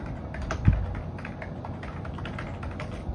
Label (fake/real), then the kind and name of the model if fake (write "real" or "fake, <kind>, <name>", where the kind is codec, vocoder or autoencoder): real